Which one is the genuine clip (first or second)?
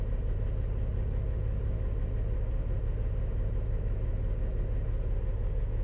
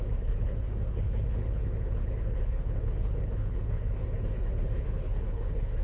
first